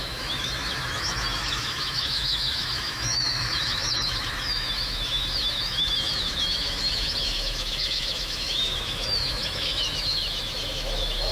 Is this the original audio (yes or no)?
no